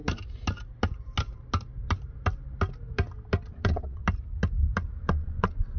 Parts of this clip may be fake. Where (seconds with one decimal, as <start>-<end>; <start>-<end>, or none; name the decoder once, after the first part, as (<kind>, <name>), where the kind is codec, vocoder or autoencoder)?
3.5-4.0 (vocoder, Vocos); 5.0-5.8